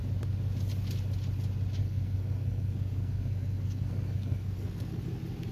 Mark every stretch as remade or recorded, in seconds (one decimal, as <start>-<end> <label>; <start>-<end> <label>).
0.0-1.8 recorded; 1.8-5.0 remade; 5.0-5.5 recorded

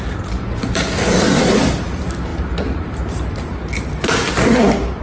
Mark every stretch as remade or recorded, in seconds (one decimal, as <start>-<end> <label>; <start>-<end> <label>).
0.0-5.0 recorded